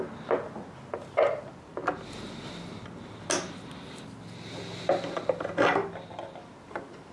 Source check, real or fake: real